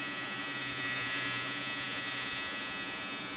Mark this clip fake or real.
fake